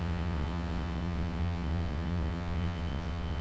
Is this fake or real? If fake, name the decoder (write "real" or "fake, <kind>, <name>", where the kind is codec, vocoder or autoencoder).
fake, vocoder, WaveNeXt